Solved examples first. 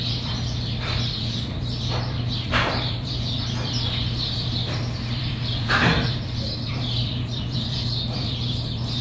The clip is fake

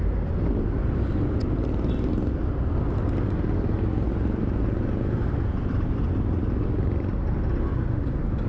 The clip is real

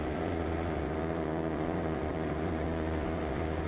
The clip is fake